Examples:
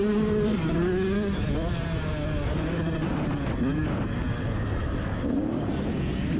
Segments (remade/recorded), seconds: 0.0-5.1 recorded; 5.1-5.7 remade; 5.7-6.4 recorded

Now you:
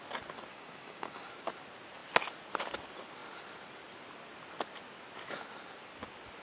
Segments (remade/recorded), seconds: 0.0-0.5 recorded; 0.5-1.3 remade; 1.3-6.4 recorded